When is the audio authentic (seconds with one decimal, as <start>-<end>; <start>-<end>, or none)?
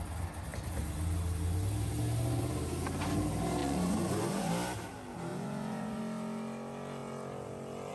0.0-3.6; 4.5-5.3; 6.0-7.9